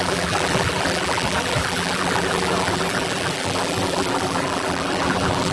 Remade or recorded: remade